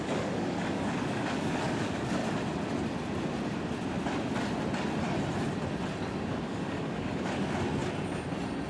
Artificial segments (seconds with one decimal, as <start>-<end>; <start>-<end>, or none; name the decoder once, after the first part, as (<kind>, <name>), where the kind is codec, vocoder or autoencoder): 0.0-2.2 (codec, DAC); 6.3-7.8